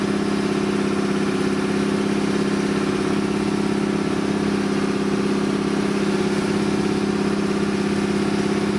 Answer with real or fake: real